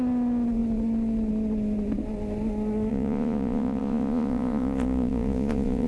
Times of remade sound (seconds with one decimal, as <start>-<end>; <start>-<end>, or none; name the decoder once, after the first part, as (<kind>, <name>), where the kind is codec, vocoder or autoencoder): 2.9-5.9 (vocoder, Vocos)